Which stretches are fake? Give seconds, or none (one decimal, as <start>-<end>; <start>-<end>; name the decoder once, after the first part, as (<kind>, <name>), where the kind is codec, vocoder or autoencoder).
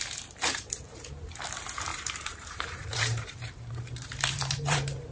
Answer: 1.9-5.1 (vocoder, BigVGAN v2)